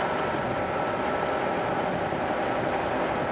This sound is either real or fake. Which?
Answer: real